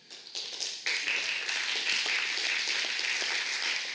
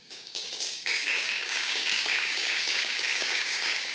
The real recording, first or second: first